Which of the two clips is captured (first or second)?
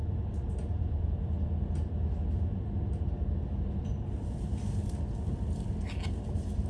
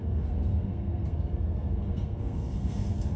first